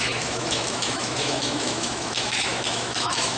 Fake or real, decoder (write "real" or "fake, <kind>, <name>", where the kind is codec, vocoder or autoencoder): fake, autoencoder, DAC-VAE